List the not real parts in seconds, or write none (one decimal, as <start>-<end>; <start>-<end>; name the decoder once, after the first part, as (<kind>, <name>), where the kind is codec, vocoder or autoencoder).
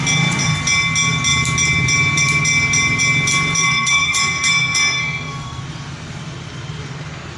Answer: 3.6-5.6 (codec, SNAC)